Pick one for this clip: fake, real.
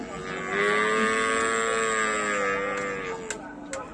real